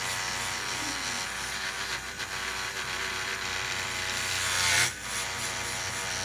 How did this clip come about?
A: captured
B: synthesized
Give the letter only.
A